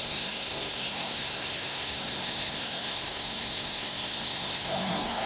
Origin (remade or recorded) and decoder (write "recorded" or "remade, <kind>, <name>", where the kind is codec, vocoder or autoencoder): remade, codec, SNAC